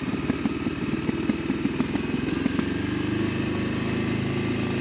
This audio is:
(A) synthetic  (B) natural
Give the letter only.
B